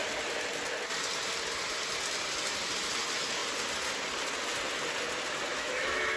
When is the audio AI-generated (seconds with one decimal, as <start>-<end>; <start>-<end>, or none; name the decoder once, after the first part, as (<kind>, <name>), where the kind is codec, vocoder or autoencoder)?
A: 5.5-6.2 (autoencoder, DAC-VAE)